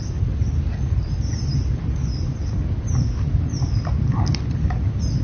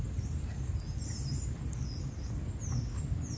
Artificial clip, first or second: first